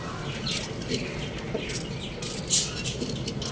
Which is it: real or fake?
real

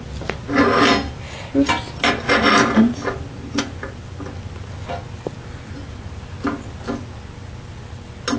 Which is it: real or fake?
real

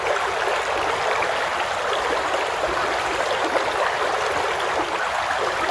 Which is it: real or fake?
real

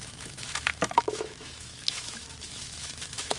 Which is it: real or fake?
fake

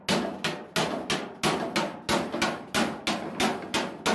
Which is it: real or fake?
real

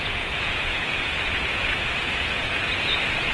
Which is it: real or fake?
fake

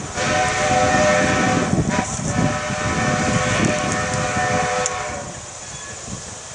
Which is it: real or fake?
real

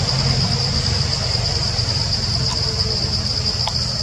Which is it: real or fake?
real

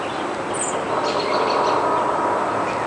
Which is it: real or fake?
real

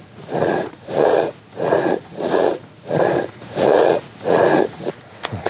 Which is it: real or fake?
fake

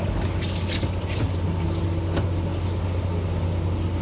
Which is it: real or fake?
real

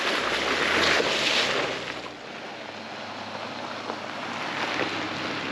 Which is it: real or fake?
real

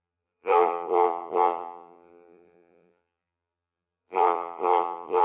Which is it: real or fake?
fake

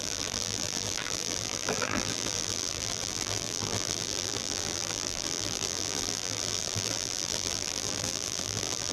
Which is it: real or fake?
fake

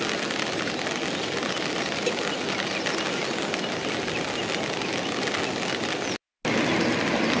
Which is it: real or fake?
real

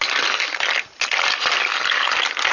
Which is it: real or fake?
real